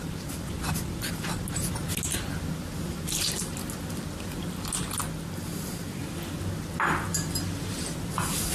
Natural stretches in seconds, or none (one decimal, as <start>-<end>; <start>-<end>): 0.0-7.1; 8.0-8.5